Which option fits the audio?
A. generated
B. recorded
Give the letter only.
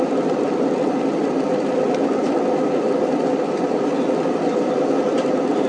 B